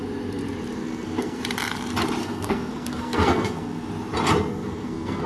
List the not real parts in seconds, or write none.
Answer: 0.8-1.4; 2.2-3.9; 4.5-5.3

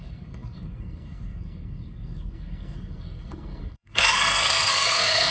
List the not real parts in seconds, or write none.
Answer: 0.0-5.3

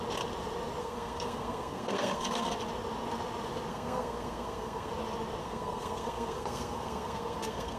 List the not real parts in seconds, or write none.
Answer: 0.8-2.5; 3.7-4.9; 5.4-7.8

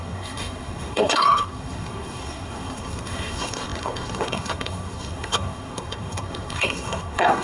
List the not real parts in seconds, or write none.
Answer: 0.0-7.4

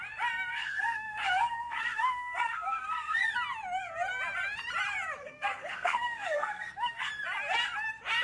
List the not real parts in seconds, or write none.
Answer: 0.5-3.3; 5.2-7.1

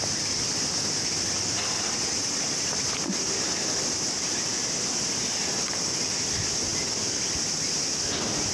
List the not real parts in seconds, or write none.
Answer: none

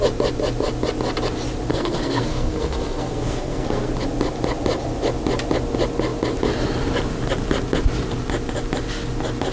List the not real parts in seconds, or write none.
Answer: 1.7-3.9